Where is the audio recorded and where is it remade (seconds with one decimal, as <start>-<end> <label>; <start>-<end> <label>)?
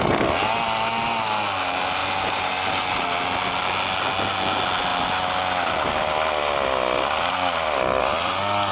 0.0-2.0 recorded; 2.0-2.5 remade; 2.5-4.9 recorded; 4.9-8.0 remade; 8.0-8.7 recorded